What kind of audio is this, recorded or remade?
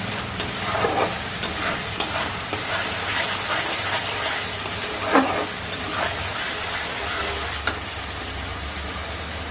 recorded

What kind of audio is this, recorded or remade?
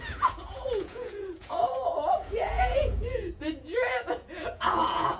remade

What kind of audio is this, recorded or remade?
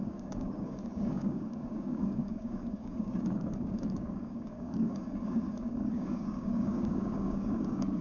remade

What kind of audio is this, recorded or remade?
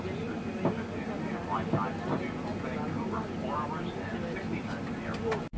recorded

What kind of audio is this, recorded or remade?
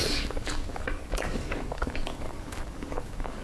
remade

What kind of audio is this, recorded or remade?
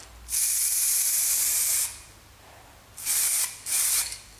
recorded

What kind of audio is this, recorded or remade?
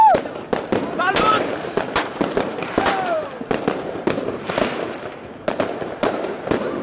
remade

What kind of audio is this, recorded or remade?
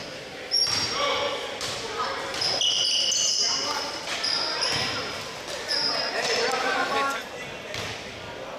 recorded